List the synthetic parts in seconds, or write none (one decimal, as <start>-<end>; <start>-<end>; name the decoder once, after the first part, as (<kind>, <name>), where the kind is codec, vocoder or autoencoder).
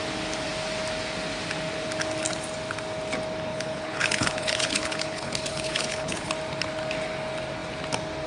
3.5-6.3 (codec, HILCodec)